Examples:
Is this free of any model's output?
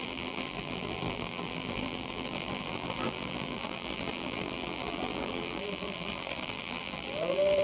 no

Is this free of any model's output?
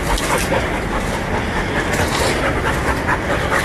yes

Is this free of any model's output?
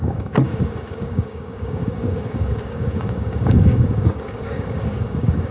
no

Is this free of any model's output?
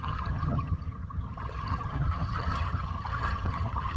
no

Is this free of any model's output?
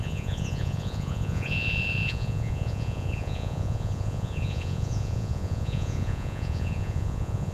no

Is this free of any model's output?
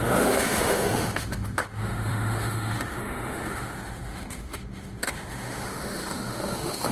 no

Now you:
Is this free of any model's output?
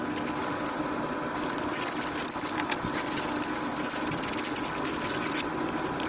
yes